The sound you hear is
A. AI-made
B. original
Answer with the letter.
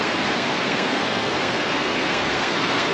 A